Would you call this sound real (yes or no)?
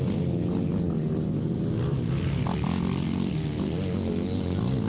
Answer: yes